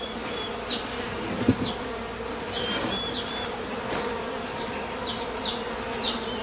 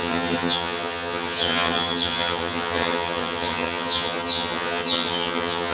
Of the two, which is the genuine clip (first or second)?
first